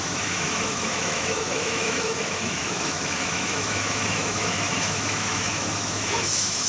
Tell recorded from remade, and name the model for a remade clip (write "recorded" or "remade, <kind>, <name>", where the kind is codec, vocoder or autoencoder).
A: remade, autoencoder, DAC-VAE